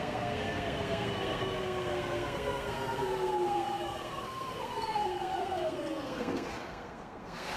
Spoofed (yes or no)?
yes